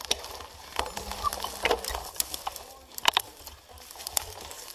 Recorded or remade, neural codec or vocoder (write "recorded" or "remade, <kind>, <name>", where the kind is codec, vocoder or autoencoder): recorded